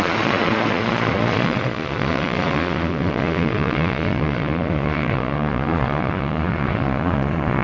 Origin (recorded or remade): remade